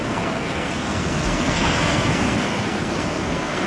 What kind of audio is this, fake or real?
fake